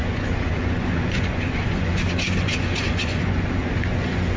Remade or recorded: remade